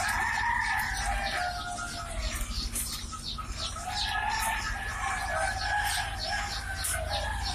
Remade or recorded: recorded